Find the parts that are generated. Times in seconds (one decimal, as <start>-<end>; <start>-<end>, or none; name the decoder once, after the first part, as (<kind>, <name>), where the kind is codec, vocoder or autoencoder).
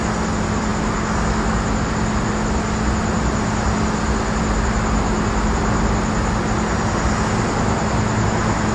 none